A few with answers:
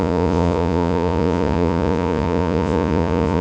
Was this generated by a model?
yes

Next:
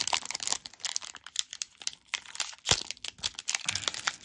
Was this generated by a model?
no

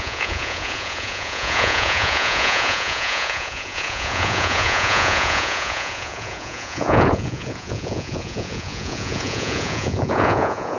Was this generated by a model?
yes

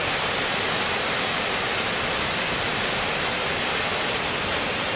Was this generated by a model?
no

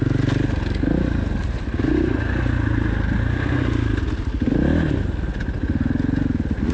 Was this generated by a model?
no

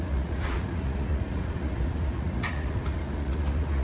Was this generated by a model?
yes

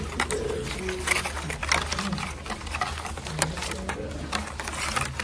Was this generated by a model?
no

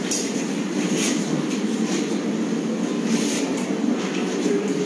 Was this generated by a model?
no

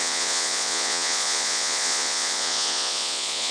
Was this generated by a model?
yes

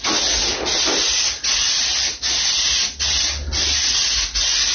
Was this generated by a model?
no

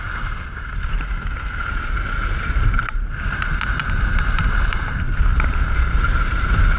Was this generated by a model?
no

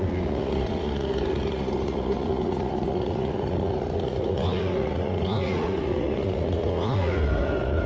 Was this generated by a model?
yes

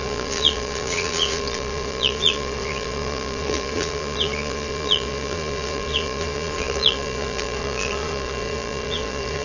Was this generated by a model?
yes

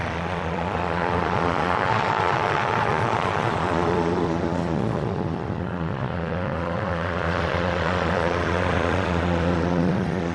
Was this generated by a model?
yes